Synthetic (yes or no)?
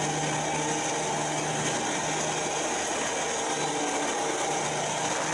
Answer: no